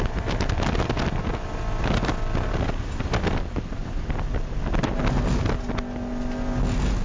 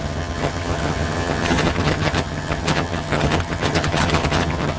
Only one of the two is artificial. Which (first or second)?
second